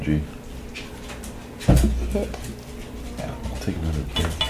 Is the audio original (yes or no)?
yes